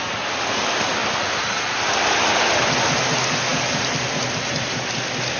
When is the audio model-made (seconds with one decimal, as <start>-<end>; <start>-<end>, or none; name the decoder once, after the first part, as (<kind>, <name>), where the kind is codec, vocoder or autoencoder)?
none